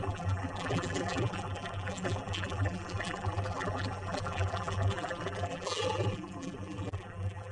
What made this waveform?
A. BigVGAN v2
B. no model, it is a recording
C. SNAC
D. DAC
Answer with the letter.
A